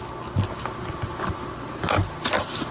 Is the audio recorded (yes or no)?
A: yes